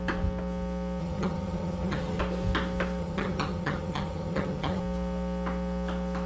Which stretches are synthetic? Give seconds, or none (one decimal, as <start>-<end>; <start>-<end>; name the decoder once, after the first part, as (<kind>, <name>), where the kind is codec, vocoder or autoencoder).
1.0-2.2 (vocoder, HiFi-GAN); 3.0-4.8